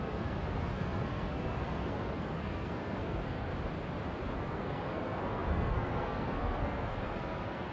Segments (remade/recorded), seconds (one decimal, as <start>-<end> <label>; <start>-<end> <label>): 0.0-3.5 remade; 3.5-4.3 recorded; 4.3-7.7 remade